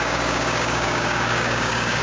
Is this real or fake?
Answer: fake